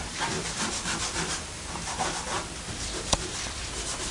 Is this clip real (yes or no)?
no